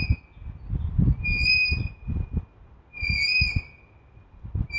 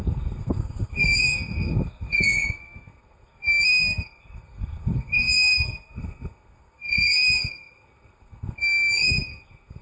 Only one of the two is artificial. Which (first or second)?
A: second